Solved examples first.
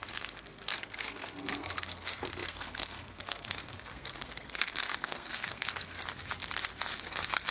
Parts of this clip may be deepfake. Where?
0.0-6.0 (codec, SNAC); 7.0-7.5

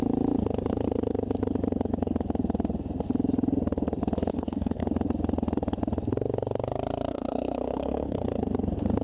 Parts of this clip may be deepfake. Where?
4.3-4.8 (codec, SNAC); 7.1-8.2

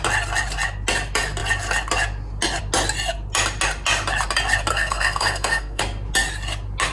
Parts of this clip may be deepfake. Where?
4.7-5.8 (codec, SNAC)

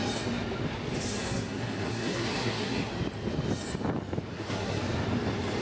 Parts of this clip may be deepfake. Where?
1.2-2.9 (codec, SNAC); 4.3-4.8

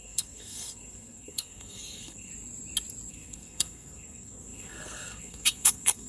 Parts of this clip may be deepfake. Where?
0.0-2.3 (codec, SNAC); 3.1-6.1